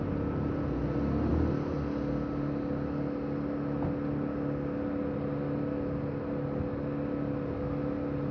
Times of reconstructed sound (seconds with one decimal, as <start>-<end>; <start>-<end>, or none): none